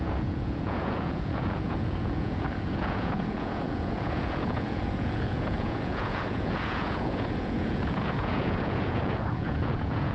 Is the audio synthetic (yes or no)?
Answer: yes